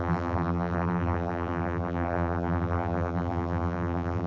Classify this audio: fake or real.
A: fake